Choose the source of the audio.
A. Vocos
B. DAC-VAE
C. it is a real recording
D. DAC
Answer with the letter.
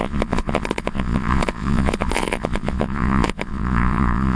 A